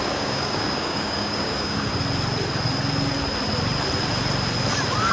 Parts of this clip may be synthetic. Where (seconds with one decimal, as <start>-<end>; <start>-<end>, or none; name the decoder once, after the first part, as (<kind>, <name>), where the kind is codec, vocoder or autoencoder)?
0.0-1.9 (codec, DAC)